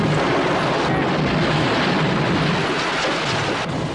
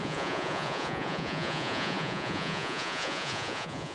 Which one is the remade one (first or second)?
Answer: second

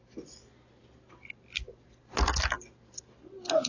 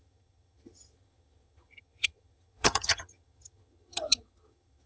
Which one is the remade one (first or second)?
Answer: second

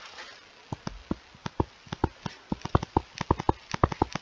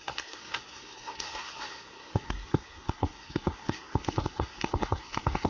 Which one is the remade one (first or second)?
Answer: second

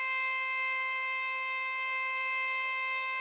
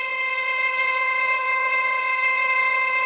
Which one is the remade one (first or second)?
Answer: second